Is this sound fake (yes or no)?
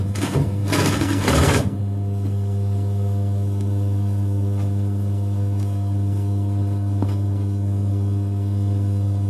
yes